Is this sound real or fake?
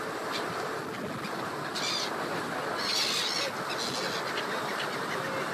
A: real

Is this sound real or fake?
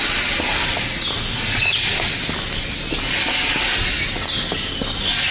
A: real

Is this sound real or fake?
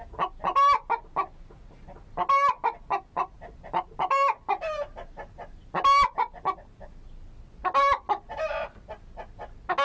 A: real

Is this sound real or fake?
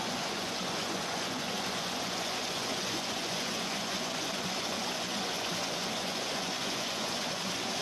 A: fake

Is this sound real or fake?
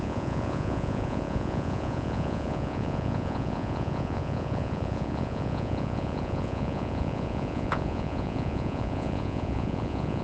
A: fake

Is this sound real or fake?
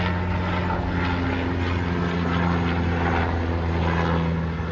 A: real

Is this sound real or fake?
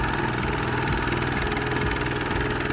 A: real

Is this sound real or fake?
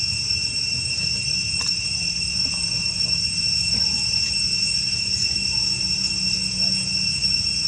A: fake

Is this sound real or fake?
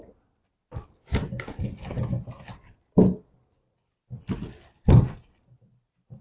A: real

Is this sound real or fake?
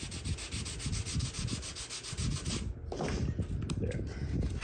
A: real